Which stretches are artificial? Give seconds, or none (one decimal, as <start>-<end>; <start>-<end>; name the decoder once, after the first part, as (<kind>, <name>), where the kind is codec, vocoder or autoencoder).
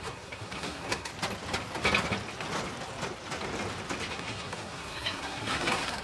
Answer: 0.0-1.1 (codec, SNAC); 4.1-6.0